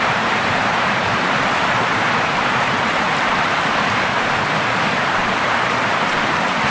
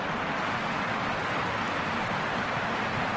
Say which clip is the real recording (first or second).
second